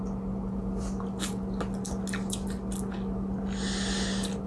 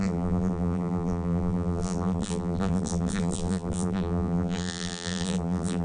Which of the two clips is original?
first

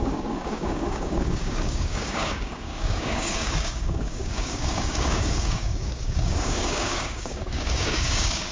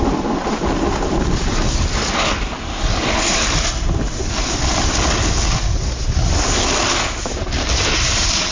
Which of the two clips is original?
second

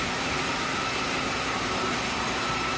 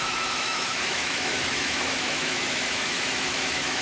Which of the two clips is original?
first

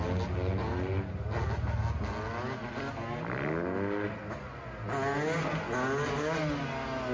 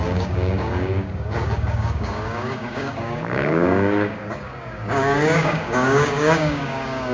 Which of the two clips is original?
first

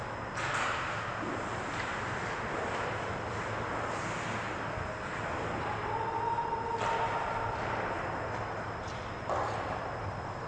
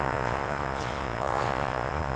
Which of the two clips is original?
first